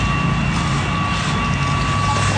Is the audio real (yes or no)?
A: yes